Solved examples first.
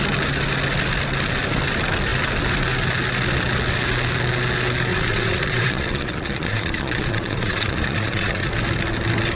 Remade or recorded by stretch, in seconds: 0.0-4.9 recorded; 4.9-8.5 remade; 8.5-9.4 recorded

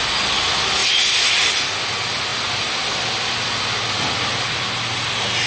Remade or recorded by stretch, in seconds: 0.0-5.5 recorded

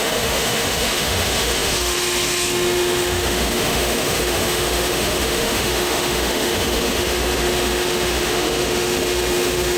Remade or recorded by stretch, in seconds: 0.0-9.8 remade

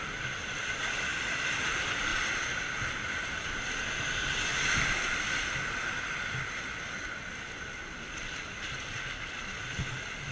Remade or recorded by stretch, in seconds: 0.0-10.3 recorded

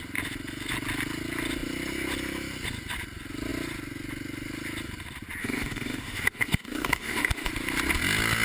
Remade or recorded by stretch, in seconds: 0.0-5.4 recorded; 5.4-7.5 remade; 7.5-8.4 recorded

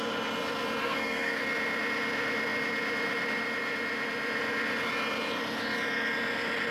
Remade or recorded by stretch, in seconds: 0.0-0.8 recorded; 0.8-1.4 remade; 1.4-6.7 recorded

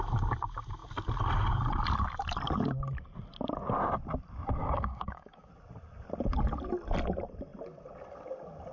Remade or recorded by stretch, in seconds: 0.0-4.6 recorded; 4.6-5.5 remade; 5.5-8.7 recorded

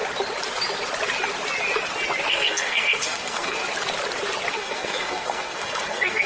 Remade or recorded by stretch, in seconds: 0.0-2.3 recorded; 2.3-3.6 remade; 3.6-4.5 recorded; 4.5-6.3 remade